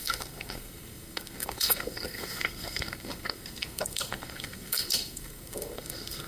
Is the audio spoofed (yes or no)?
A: yes